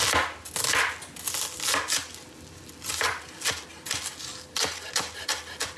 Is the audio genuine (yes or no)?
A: yes